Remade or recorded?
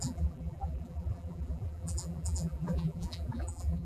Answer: remade